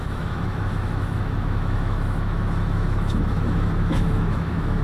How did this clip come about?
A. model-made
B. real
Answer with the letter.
A